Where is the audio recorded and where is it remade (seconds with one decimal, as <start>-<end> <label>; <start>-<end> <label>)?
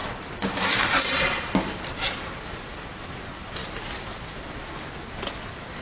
0.0-2.4 remade; 2.4-3.6 recorded; 3.6-4.1 remade; 4.1-5.8 recorded